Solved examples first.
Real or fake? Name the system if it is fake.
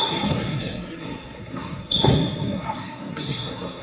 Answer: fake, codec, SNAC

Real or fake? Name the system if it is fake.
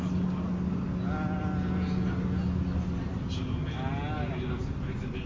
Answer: real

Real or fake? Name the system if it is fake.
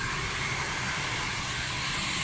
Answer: real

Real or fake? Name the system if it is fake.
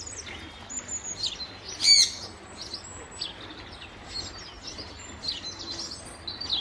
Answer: real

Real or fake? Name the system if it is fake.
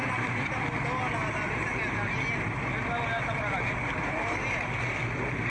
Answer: real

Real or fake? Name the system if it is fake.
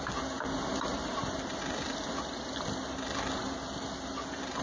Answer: real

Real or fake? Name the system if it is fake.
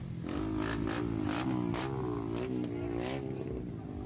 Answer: real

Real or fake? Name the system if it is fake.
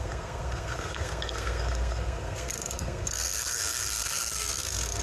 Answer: fake, codec, SNAC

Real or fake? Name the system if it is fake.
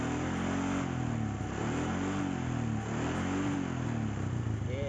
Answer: real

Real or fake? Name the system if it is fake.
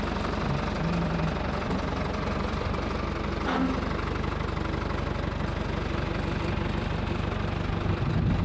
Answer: real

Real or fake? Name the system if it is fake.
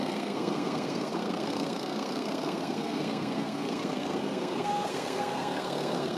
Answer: fake, codec, SNAC